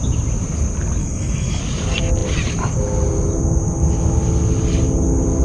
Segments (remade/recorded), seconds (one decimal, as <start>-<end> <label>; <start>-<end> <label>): 0.0-1.0 recorded; 1.0-1.6 remade; 1.6-5.4 recorded